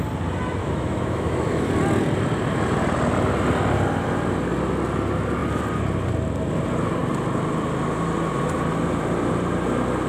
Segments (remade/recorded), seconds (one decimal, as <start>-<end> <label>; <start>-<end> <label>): 0.0-0.6 recorded; 0.6-1.7 remade; 1.7-10.1 recorded